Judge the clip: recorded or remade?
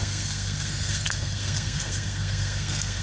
remade